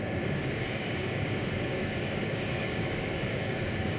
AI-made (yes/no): yes